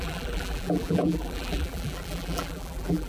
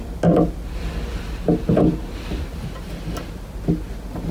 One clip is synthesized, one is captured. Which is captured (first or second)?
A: second